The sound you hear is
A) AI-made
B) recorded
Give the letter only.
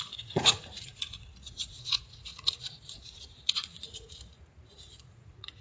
A